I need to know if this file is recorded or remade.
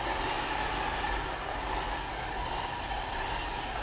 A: recorded